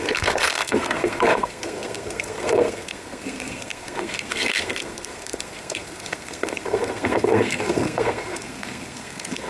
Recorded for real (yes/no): no